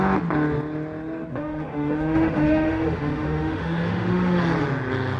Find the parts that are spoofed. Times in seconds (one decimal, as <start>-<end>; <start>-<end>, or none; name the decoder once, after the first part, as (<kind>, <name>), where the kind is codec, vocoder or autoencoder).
1.3-4.4 (autoencoder, DAC-VAE)